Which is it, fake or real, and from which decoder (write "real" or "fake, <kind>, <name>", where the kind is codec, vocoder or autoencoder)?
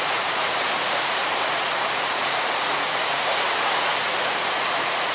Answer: fake, vocoder, Vocos